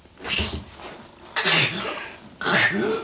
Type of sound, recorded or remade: recorded